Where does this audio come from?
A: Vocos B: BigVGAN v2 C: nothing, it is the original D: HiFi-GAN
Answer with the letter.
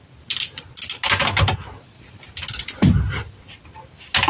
C